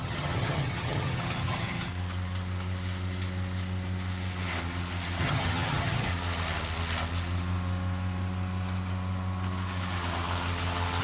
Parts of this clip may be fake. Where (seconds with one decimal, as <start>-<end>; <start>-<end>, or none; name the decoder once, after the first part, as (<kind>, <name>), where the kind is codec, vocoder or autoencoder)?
0.0-1.9 (vocoder, HiFi-GAN); 5.2-6.1